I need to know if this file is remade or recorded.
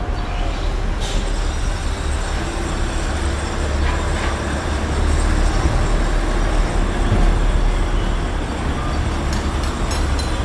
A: recorded